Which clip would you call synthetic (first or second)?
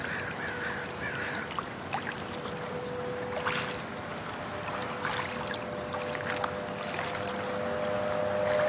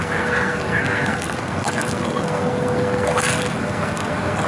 second